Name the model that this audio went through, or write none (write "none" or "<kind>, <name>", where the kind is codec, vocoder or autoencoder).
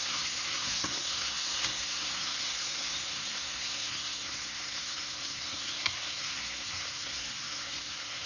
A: codec, SNAC